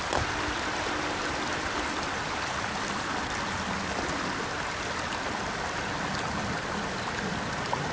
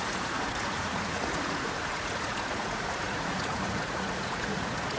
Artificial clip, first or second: second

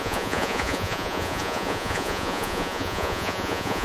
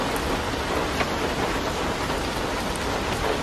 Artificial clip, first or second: first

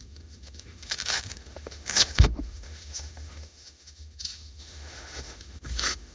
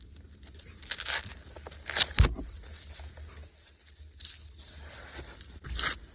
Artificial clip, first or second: first